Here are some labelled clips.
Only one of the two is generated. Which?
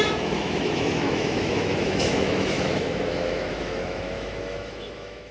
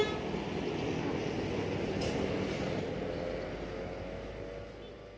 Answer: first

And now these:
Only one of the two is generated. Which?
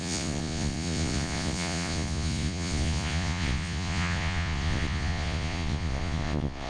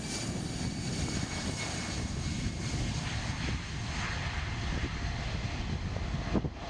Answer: first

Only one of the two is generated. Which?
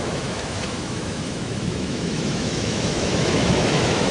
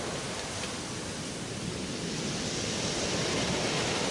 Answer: first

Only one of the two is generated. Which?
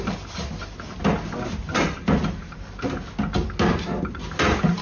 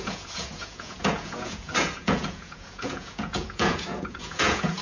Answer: second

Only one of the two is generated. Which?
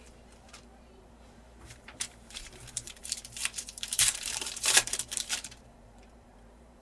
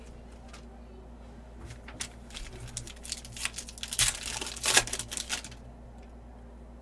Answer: first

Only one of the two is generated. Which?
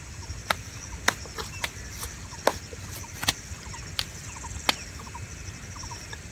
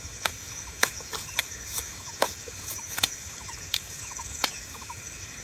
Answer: second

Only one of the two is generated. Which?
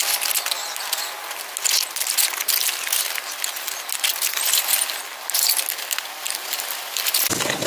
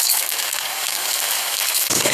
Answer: second